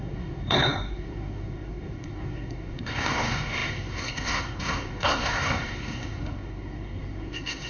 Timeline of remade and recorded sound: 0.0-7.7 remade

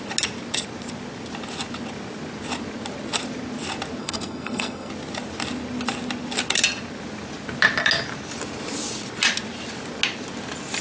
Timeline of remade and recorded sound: 0.0-4.0 recorded; 4.0-4.9 remade; 4.9-10.8 recorded

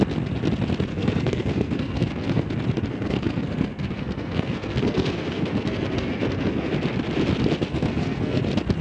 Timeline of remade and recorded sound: 0.0-0.9 recorded; 0.9-2.5 remade; 2.5-2.9 recorded; 2.9-6.7 remade; 6.7-7.7 recorded; 7.7-8.4 remade; 8.4-8.8 recorded

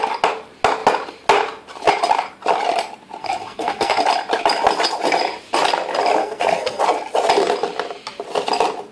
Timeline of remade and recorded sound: 0.0-3.2 recorded; 3.2-4.0 remade; 4.0-6.2 recorded; 6.2-6.8 remade; 6.8-8.9 recorded

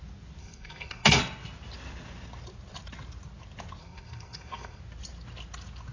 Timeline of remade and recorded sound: 0.0-0.4 recorded; 0.4-1.2 remade; 1.2-3.8 recorded; 3.8-4.8 remade; 4.8-5.9 recorded

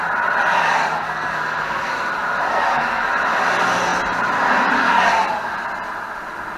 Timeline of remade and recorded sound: 0.0-1.0 recorded; 1.0-2.1 remade; 2.1-2.5 recorded; 2.5-3.1 remade; 3.1-6.6 recorded

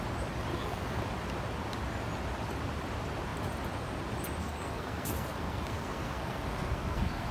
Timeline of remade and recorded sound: 0.0-0.5 recorded; 0.5-1.0 remade; 1.0-4.4 recorded; 4.4-7.3 remade

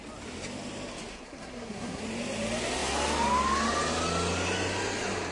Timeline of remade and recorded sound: 0.0-1.1 recorded; 1.1-2.0 remade; 2.0-5.3 recorded